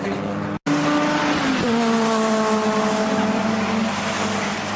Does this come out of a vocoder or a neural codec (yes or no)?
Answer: no